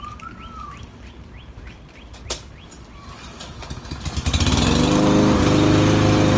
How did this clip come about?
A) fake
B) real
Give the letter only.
B